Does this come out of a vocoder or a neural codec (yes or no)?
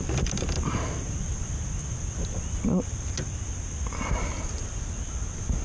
no